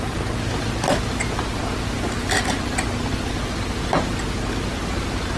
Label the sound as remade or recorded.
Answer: recorded